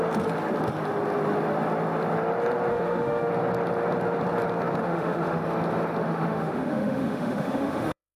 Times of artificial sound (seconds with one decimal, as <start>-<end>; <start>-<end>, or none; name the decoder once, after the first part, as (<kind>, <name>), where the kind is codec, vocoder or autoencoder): 2.7-3.3 (autoencoder, DAC-VAE); 4.8-5.4; 6.0-8.2

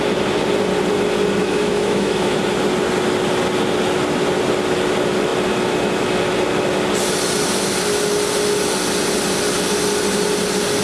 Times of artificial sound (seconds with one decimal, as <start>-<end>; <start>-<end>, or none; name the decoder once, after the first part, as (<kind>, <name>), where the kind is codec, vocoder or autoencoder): 1.4-2.4 (autoencoder, DAC-VAE)

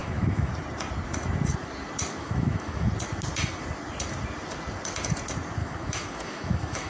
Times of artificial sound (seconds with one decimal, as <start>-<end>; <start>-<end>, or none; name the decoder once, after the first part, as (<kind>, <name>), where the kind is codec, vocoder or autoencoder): 0.0-0.5 (autoencoder, DAC-VAE); 2.2-2.9; 5.6-6.9

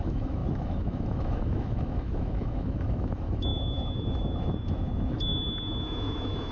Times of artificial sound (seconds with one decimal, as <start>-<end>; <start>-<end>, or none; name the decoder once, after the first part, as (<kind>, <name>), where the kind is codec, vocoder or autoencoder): 0.0-6.5 (autoencoder, DAC-VAE)

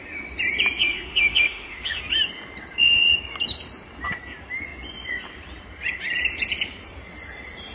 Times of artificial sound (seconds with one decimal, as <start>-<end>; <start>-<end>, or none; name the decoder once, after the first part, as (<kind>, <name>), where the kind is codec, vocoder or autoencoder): 0.8-2.0 (autoencoder, DAC-VAE)

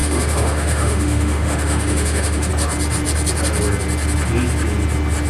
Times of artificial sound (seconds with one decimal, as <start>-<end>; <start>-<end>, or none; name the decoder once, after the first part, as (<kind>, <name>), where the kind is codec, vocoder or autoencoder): 0.0-2.5 (autoencoder, DAC-VAE)